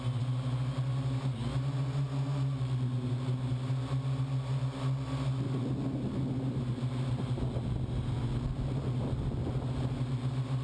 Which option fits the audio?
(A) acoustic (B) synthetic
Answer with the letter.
A